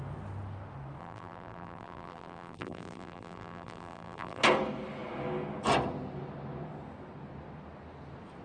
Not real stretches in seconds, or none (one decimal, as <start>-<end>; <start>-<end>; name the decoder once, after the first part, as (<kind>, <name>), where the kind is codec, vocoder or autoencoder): 1.0-4.4 (vocoder, BigVGAN v2)

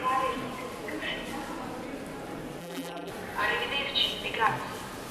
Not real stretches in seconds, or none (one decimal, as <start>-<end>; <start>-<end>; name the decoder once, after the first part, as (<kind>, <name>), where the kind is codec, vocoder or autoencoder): 2.6-3.1 (vocoder, BigVGAN v2)

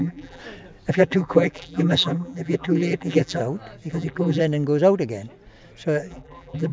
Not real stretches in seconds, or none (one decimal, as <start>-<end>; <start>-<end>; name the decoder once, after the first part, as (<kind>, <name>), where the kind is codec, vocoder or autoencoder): 0.0-0.4 (vocoder, BigVGAN v2); 0.9-3.4; 3.9-4.4; 6.1-6.7

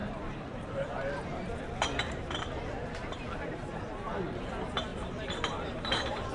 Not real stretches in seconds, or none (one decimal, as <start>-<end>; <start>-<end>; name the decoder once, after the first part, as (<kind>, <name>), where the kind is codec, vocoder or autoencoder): 0.0-3.8 (vocoder, BigVGAN v2); 4.9-6.3

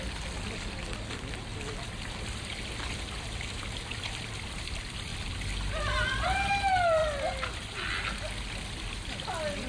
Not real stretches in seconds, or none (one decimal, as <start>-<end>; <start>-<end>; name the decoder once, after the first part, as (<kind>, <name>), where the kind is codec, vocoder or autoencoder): 1.5-4.6 (vocoder, BigVGAN v2); 5.1-6.5; 7.0-7.9